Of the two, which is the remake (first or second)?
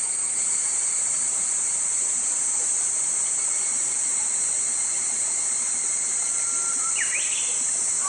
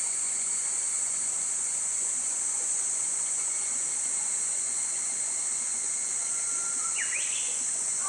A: second